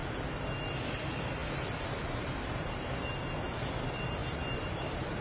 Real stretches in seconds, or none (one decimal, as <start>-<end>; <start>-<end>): 0.0-0.6

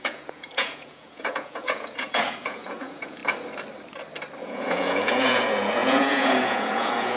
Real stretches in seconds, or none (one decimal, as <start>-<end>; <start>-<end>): 3.2-4.4

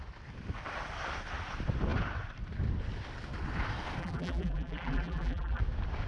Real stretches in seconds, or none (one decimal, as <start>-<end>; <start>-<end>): 0.0-4.0; 5.6-6.1

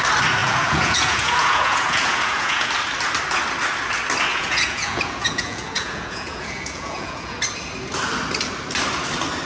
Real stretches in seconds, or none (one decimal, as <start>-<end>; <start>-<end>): 0.0-0.4; 2.7-4.3; 7.4-9.5

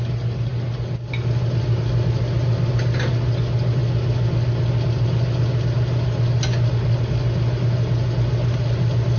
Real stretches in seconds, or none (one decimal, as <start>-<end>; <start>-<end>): 0.0-9.2

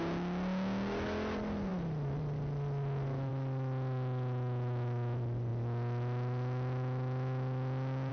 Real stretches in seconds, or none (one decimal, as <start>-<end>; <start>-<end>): 0.0-8.1

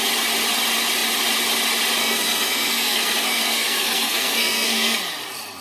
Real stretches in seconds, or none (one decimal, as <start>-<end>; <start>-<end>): 0.0-2.0; 5.0-5.6

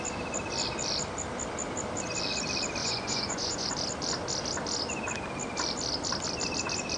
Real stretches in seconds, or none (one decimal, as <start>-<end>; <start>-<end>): 0.0-2.8; 3.7-7.0